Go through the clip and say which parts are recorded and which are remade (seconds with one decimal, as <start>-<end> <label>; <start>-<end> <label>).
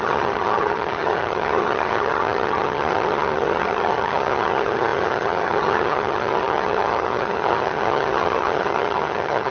0.0-9.5 remade